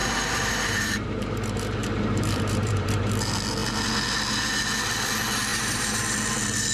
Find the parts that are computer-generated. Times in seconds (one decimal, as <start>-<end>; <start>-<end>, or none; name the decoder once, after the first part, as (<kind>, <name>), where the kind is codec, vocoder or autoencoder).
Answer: 0.0-3.1 (vocoder, BigVGAN v2); 5.5-6.0

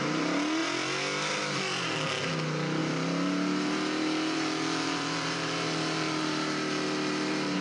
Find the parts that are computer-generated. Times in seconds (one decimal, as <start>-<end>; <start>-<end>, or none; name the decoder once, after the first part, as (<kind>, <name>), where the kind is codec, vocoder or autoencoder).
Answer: 2.8-7.6 (vocoder, BigVGAN v2)

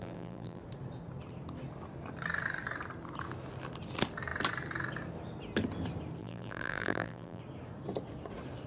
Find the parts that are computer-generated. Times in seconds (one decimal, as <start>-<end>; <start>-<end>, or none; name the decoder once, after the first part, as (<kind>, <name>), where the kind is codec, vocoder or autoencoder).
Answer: 0.0-0.6 (vocoder, BigVGAN v2); 6.2-7.4

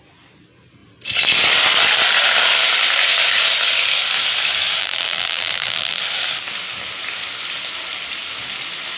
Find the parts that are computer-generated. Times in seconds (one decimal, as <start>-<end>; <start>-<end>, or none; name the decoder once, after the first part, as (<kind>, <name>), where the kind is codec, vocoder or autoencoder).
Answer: 4.8-6.0 (vocoder, BigVGAN v2)

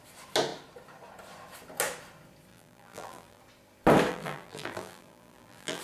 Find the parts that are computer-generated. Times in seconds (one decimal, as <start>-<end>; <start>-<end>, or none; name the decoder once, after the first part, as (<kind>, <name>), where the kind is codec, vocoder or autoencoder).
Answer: 2.5-3.4 (vocoder, BigVGAN v2); 4.1-5.8

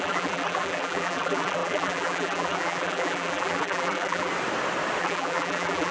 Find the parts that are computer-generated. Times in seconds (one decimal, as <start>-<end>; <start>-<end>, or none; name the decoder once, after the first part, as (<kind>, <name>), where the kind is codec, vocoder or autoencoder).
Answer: 0.0-4.3 (vocoder, BigVGAN v2); 5.0-5.9

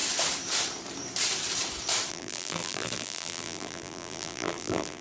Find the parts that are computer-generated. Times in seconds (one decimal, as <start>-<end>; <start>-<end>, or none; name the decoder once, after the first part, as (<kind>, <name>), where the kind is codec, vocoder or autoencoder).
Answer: 2.1-5.0 (vocoder, BigVGAN v2)